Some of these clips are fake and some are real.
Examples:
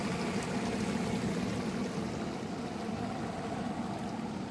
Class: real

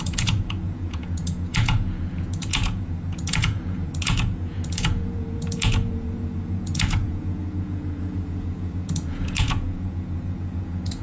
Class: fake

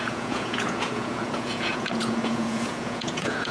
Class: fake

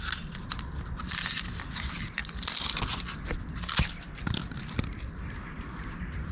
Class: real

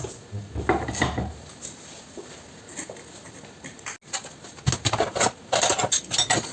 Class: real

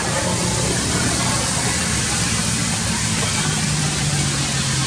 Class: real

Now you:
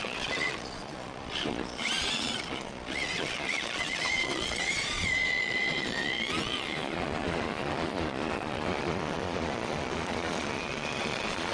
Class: fake